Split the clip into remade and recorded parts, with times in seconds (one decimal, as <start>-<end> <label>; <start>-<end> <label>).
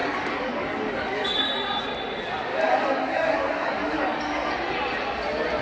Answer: 0.0-1.4 remade; 1.4-2.5 recorded; 2.5-4.5 remade; 4.5-5.6 recorded